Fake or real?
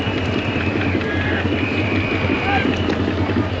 real